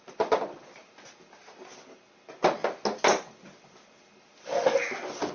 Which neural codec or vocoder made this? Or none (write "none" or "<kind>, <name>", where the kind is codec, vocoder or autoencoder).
none